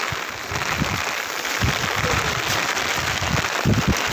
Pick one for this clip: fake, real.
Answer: real